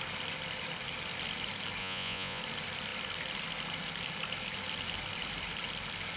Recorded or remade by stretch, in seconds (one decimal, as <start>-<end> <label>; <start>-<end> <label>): 0.0-1.8 recorded; 1.8-2.4 remade; 2.4-6.2 recorded